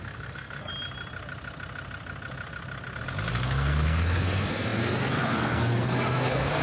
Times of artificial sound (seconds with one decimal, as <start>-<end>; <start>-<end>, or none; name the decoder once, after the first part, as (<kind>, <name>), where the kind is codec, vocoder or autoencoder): 0.0-0.7 (codec, SNAC); 3.3-6.6